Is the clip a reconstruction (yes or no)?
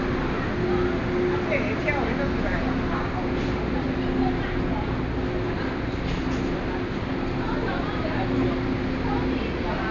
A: no